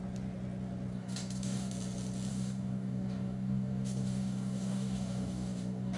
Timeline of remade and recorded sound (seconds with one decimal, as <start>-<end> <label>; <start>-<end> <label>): 0.0-0.9 recorded; 0.9-1.7 remade; 1.7-2.3 recorded; 2.3-6.0 remade